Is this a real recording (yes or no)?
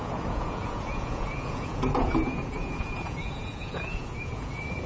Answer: no